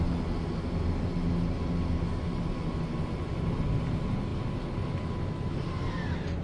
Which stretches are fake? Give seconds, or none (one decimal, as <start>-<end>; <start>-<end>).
none